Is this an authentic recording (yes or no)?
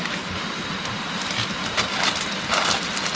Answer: yes